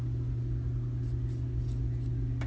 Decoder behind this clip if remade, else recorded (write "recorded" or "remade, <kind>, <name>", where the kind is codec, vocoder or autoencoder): recorded